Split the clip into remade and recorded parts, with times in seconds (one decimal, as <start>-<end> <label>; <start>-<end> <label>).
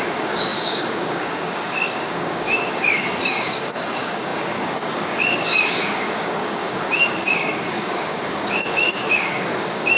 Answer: 0.0-10.0 remade